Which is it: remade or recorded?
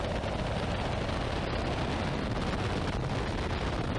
recorded